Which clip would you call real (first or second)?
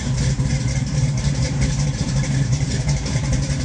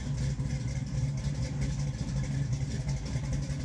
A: second